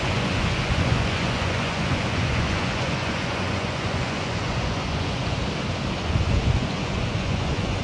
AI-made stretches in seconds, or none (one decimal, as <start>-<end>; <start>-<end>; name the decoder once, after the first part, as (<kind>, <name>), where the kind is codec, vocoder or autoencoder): 0.0-5.4 (vocoder, Vocos); 6.0-7.8